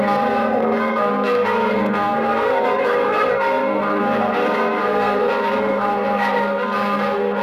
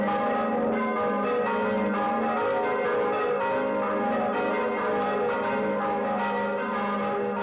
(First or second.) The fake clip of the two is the first